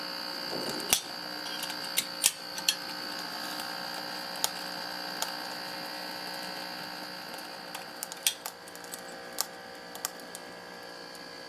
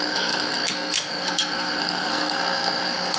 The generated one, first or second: second